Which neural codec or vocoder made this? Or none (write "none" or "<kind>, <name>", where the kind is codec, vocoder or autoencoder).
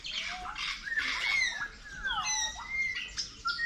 none